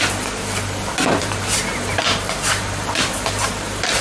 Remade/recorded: remade